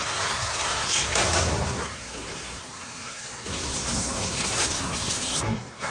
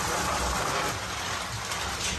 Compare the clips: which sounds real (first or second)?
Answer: second